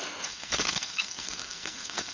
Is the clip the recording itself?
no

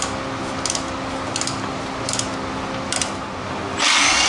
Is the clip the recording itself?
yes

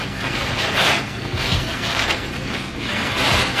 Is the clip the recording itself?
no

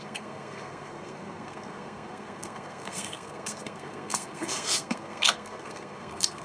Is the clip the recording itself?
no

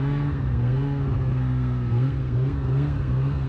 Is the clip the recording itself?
no